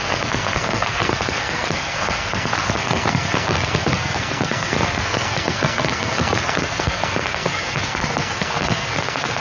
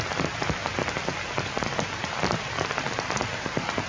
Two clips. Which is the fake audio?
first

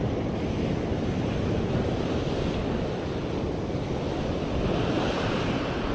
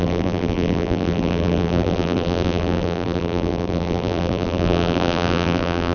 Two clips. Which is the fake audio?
second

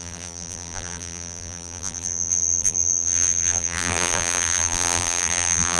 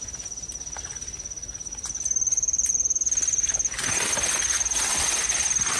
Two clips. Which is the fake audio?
first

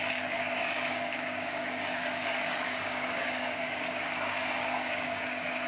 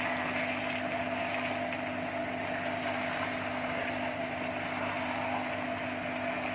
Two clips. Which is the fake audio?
first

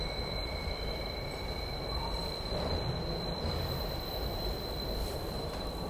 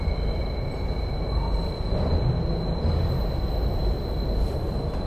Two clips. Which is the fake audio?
first